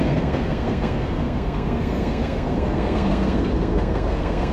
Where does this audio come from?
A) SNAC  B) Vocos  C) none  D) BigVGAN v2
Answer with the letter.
A